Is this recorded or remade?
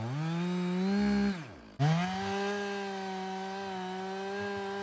recorded